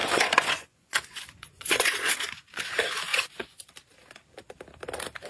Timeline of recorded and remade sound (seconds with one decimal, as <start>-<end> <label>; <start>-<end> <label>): 0.0-2.7 remade; 2.7-3.1 recorded; 3.1-3.7 remade; 3.7-5.3 recorded